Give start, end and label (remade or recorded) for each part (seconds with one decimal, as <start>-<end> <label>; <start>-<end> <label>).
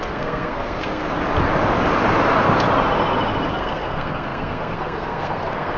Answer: 0.0-1.0 remade; 1.0-3.5 recorded; 3.5-5.8 remade